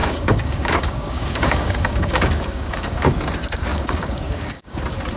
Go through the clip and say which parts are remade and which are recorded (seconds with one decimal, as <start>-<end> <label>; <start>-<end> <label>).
0.0-3.1 remade; 3.1-3.7 recorded; 3.7-4.8 remade; 4.8-5.2 recorded